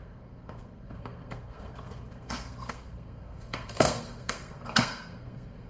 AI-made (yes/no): yes